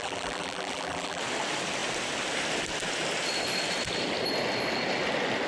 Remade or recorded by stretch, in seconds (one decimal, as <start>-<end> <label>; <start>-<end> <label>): 0.0-1.2 remade; 1.2-5.5 recorded